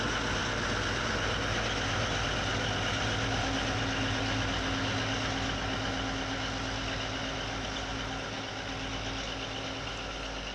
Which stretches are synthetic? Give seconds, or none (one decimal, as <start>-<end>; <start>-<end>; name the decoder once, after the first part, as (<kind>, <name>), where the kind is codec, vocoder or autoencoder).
none